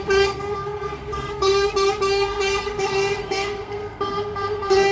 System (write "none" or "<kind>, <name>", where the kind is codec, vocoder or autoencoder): codec, SNAC